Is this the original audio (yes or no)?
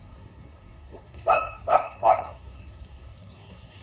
no